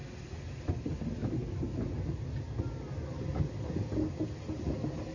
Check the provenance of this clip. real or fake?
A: real